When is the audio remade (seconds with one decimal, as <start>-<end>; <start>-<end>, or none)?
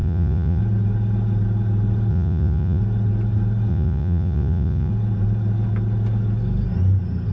0.0-0.6; 2.1-2.8; 3.7-4.9